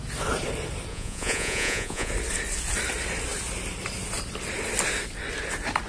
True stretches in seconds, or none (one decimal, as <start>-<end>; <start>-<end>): 0.0-0.9; 2.1-5.9